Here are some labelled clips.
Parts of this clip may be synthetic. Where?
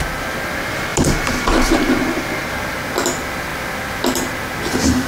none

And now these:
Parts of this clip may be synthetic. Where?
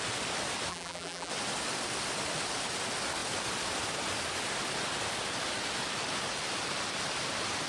0.7-1.3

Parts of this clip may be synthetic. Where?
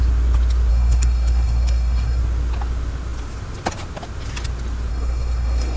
0.7-2.2; 4.9-5.8